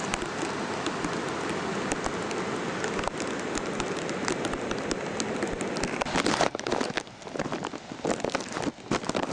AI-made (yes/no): no